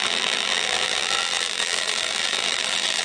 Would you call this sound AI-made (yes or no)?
yes